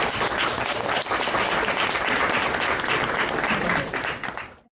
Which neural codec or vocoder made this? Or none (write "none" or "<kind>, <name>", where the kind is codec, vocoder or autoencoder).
none